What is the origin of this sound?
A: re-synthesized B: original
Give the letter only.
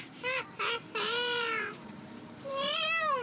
A